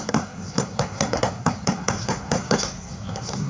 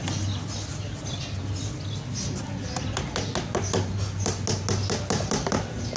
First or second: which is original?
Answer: second